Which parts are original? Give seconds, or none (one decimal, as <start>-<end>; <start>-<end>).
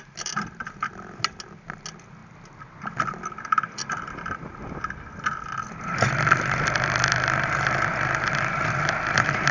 0.0-9.5